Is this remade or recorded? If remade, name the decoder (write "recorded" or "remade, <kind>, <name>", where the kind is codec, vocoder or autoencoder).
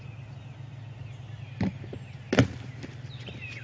recorded